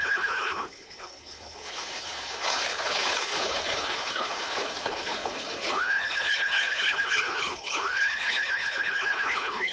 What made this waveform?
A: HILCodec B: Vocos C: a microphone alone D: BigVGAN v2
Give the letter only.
A